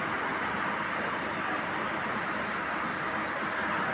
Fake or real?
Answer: real